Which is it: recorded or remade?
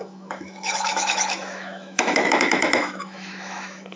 remade